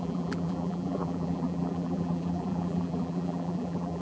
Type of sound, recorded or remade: remade